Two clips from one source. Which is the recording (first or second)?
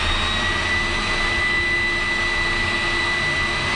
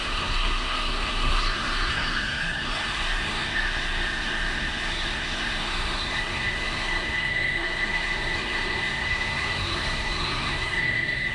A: first